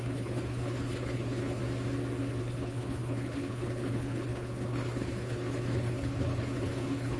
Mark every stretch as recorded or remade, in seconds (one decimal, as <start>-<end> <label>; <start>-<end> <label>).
0.0-1.6 remade; 1.6-2.4 recorded; 2.4-7.2 remade